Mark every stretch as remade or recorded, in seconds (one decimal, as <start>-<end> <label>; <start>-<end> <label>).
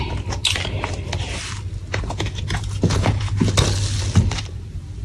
0.0-1.9 recorded; 1.9-3.5 remade; 3.5-5.0 recorded